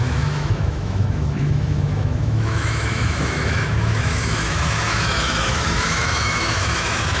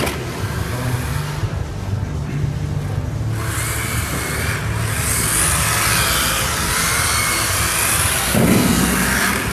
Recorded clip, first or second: second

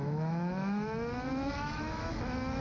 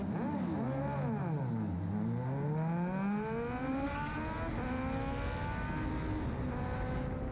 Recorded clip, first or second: second